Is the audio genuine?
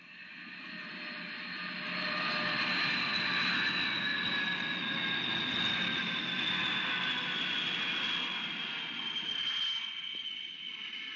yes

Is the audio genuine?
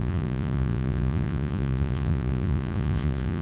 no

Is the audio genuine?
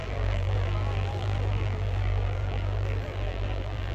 no